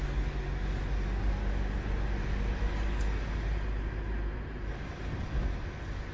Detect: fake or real real